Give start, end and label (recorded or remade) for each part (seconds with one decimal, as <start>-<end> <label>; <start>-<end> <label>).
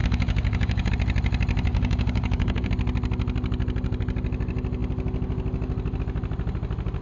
0.0-0.9 remade; 0.9-1.7 recorded; 1.7-2.7 remade; 2.7-7.0 recorded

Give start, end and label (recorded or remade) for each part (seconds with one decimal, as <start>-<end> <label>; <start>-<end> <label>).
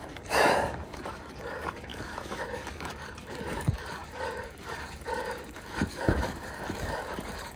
0.0-7.6 remade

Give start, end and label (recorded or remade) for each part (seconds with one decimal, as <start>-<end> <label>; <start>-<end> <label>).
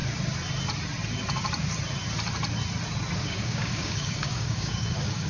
0.0-3.2 recorded; 3.2-5.3 remade